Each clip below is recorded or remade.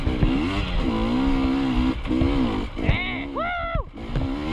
recorded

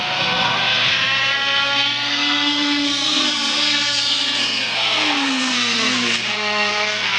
remade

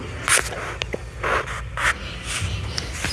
recorded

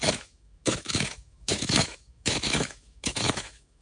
remade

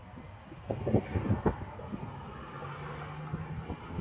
recorded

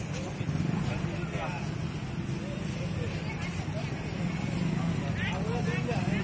recorded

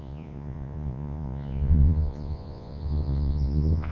remade